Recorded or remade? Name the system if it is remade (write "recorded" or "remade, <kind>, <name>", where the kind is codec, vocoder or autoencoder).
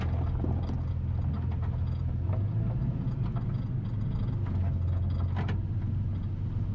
recorded